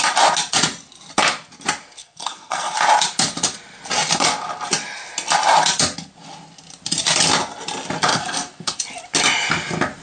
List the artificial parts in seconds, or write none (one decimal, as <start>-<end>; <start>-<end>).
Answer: 2.0-2.7; 8.1-8.8